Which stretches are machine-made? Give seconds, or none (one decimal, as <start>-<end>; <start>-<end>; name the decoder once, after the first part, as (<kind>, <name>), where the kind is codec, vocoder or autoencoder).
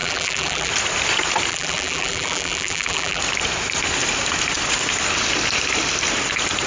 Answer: 0.0-0.7 (vocoder, BigVGAN v2); 1.5-3.2